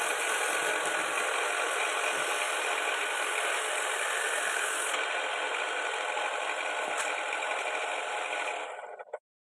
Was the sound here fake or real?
real